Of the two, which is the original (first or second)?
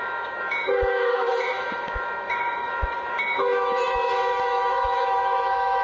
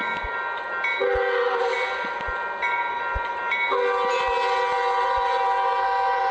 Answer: second